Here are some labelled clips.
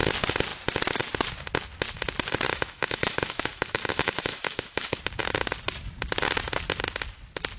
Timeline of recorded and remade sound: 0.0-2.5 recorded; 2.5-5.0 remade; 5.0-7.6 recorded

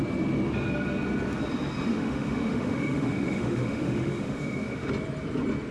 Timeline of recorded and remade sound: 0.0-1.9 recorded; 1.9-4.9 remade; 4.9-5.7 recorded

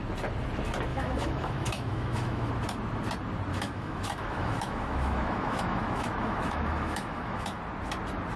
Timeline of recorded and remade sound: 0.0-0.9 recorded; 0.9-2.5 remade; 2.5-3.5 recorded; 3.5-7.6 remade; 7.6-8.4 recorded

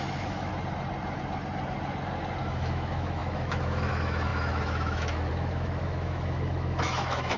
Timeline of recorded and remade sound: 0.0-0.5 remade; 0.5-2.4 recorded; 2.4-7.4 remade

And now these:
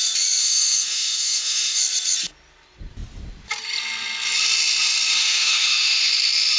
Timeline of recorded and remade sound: 0.0-0.4 recorded; 0.4-1.8 remade; 1.8-5.2 recorded; 5.2-6.1 remade; 6.1-6.6 recorded

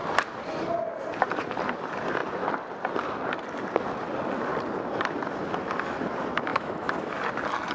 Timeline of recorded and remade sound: 0.0-6.5 recorded; 6.5-7.1 remade; 7.1-7.7 recorded

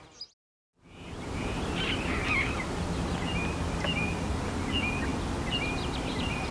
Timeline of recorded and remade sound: 0.0-6.5 recorded